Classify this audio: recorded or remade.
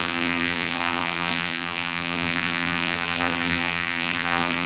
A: remade